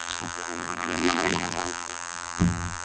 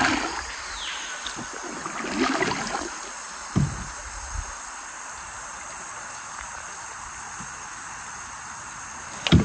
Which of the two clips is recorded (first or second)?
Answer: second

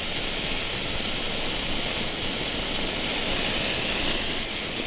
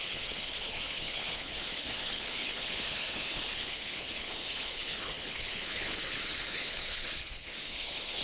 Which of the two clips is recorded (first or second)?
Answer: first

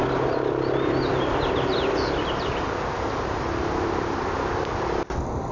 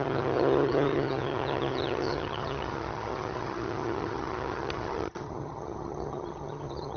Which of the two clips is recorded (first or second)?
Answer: first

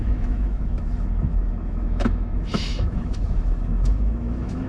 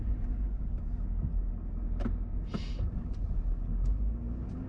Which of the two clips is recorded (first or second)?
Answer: second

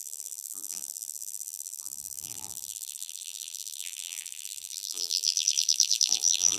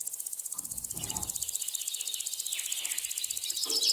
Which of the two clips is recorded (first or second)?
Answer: second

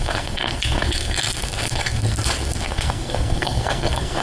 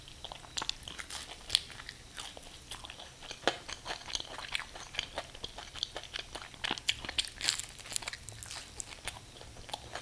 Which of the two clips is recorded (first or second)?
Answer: second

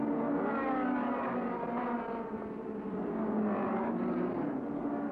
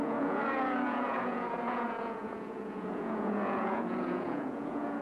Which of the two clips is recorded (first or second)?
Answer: first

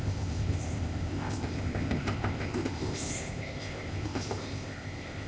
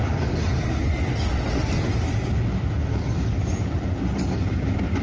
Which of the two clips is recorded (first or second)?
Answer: second